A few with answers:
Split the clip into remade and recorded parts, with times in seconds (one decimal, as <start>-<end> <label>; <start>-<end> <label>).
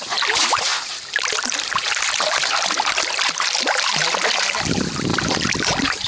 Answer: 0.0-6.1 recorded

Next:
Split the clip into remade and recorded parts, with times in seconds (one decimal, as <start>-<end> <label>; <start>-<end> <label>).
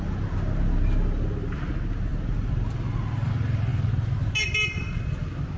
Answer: 0.0-5.6 recorded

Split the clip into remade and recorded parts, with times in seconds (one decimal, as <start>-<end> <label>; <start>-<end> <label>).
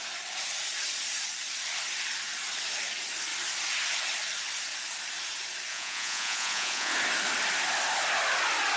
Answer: 0.0-5.7 recorded; 5.7-6.9 remade; 6.9-8.8 recorded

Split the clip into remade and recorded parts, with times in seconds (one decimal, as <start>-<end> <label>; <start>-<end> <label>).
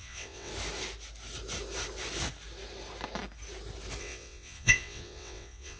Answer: 0.0-0.5 remade; 0.5-4.0 recorded; 4.0-5.8 remade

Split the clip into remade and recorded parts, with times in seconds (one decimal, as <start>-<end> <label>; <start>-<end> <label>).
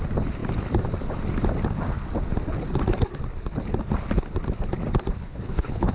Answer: 0.0-5.1 recorded; 5.1-5.9 remade